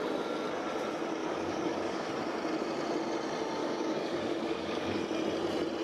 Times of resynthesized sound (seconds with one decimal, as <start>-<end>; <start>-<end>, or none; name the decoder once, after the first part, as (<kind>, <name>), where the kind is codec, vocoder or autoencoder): 1.2-2.1 (codec, DAC); 3.6-5.0